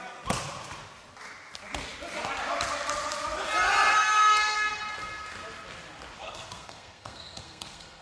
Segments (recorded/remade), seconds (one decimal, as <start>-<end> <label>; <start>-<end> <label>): 0.0-3.9 recorded; 3.9-4.7 remade; 4.7-6.2 recorded; 6.2-8.0 remade